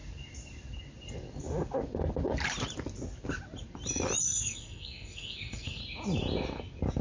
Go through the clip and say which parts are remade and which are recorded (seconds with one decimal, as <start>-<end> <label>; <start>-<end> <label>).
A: 0.0-4.2 recorded; 4.2-5.8 remade; 5.8-7.0 recorded